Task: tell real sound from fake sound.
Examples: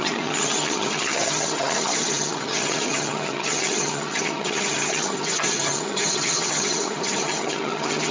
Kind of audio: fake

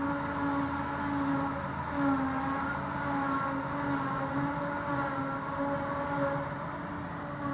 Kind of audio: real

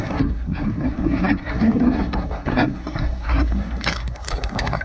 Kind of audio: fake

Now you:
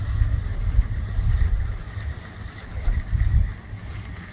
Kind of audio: real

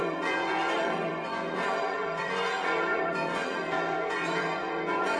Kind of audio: fake